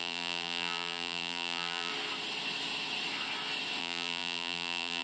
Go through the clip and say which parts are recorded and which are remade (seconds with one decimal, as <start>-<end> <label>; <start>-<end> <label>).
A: 0.0-1.9 remade; 1.9-3.8 recorded; 3.8-5.0 remade